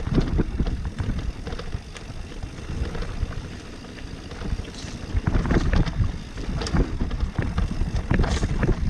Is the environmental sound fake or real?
real